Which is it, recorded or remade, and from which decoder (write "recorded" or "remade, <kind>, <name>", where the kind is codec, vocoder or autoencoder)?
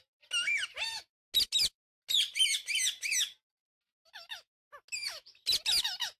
recorded